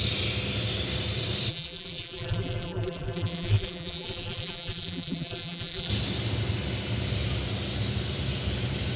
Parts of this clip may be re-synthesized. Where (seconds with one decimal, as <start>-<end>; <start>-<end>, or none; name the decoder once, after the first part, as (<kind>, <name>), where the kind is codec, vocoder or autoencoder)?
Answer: 1.5-5.9 (vocoder, BigVGAN v2)